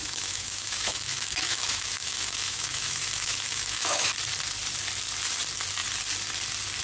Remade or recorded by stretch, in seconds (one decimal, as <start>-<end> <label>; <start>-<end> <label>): 0.0-4.1 remade; 4.1-6.8 recorded